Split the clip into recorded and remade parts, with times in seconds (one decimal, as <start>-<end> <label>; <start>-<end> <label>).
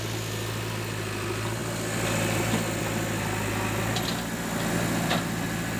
0.0-5.8 recorded